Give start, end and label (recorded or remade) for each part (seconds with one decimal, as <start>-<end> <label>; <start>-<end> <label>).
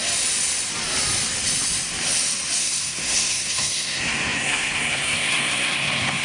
0.0-2.6 recorded; 2.6-6.2 remade